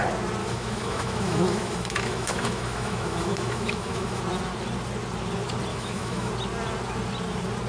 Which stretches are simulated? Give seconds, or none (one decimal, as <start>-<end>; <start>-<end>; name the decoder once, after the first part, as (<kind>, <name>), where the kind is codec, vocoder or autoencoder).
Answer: 0.4-4.2 (autoencoder, DAC-VAE); 5.7-6.3